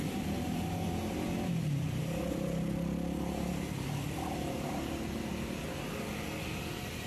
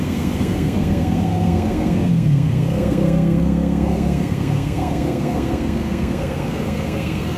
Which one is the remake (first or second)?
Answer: second